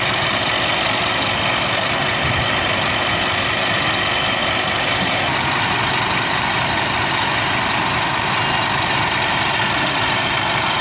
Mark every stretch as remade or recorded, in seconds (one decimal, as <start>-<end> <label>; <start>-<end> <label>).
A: 0.0-10.8 recorded